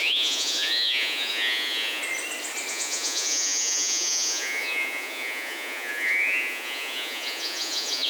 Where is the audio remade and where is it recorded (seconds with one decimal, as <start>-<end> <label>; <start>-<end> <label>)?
0.0-2.0 remade; 2.0-2.7 recorded; 2.7-8.1 remade